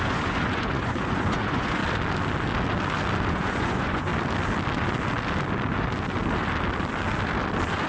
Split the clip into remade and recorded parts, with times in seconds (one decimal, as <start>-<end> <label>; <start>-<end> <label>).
0.0-1.8 remade; 1.8-3.3 recorded; 3.3-4.1 remade; 4.1-7.9 recorded